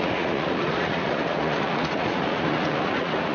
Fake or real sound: fake